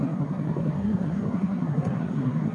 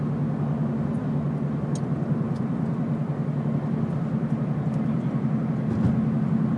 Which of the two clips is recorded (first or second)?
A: second